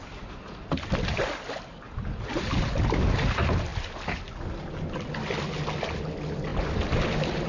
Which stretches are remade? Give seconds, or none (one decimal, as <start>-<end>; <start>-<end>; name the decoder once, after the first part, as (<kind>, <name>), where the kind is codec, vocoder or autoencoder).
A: none